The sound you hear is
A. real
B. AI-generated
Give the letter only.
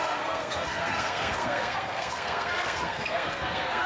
B